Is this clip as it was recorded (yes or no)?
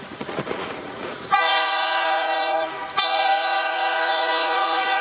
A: no